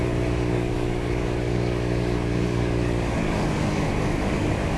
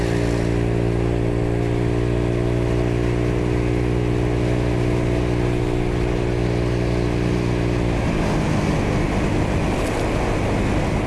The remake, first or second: first